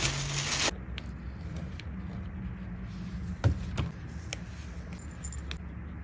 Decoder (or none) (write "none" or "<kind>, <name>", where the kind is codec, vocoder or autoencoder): none